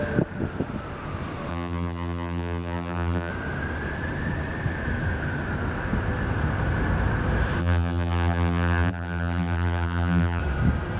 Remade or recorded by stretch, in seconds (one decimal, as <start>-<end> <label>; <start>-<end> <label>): 0.0-1.5 recorded; 1.5-3.3 remade; 3.3-7.6 recorded; 7.6-10.4 remade; 10.4-11.0 recorded